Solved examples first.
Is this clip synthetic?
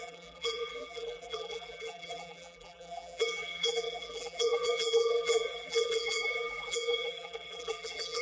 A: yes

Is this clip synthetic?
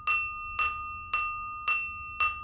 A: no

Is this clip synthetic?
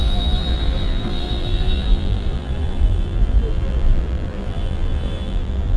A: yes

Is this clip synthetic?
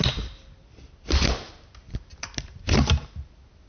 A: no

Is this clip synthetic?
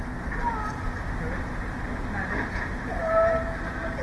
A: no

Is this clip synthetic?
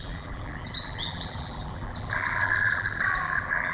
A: yes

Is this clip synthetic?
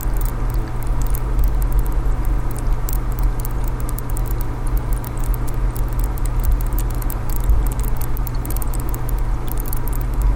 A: no